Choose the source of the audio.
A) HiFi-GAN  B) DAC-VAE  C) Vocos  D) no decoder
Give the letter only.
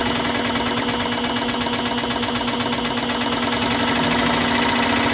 D